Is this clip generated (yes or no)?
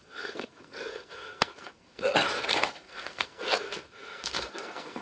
yes